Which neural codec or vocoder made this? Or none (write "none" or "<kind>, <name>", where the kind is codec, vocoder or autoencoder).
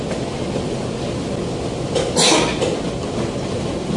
none